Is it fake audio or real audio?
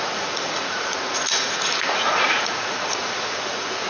fake